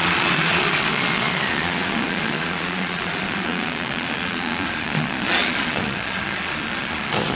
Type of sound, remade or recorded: remade